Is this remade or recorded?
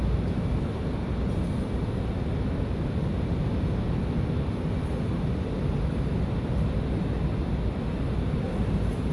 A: recorded